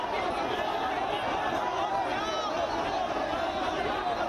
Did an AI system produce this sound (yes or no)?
no